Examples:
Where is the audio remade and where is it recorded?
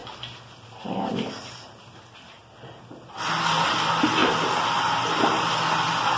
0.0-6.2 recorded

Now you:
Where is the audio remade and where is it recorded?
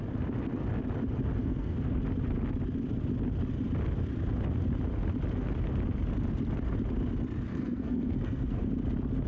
0.0-1.4 recorded; 1.4-2.0 remade; 2.0-7.5 recorded; 7.5-8.7 remade; 8.7-9.3 recorded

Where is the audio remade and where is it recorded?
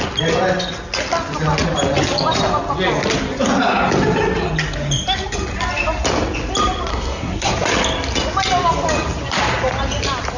0.0-6.9 recorded; 6.9-7.5 remade; 7.5-10.4 recorded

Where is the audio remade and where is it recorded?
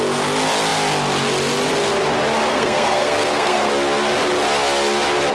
0.0-2.5 recorded; 2.5-3.7 remade; 3.7-5.3 recorded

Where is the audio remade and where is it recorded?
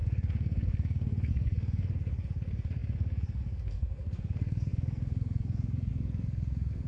0.0-6.9 remade